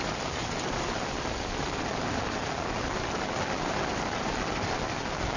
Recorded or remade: recorded